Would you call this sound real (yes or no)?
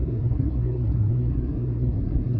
no